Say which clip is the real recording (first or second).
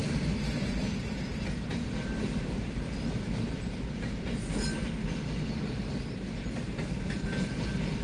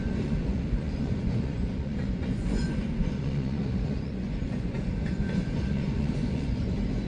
first